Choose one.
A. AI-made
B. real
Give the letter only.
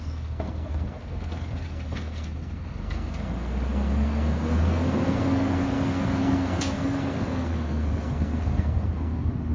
A